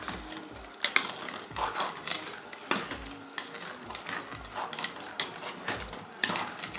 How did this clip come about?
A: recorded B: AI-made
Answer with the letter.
A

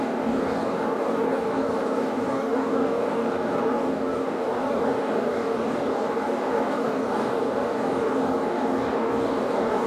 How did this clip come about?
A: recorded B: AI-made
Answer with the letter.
B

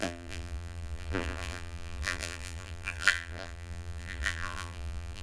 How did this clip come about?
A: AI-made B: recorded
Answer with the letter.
A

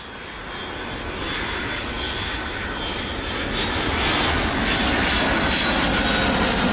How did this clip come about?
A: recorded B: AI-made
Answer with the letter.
A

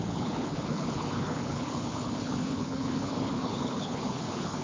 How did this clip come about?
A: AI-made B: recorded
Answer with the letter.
A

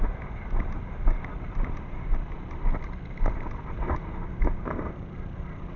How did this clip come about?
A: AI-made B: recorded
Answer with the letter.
B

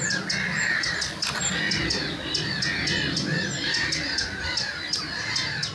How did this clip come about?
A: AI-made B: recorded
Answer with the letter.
B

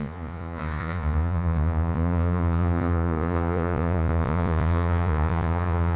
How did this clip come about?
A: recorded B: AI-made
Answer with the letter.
B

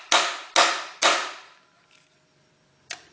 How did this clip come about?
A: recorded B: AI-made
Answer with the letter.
A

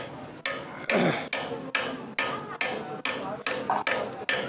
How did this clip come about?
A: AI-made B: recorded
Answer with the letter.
B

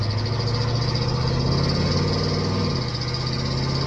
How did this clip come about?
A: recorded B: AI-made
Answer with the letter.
A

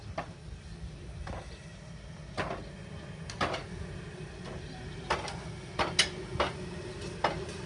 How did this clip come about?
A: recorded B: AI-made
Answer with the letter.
A